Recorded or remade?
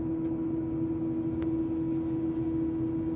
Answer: recorded